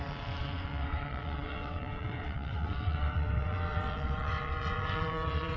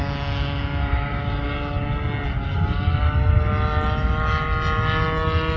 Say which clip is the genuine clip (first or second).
second